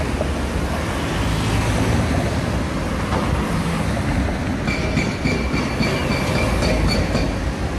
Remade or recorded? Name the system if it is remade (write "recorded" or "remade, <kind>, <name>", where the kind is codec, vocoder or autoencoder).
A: recorded